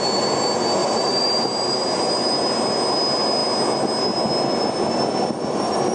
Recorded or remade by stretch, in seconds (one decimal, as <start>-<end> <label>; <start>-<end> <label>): 0.0-0.8 recorded; 0.8-2.3 remade; 2.3-5.9 recorded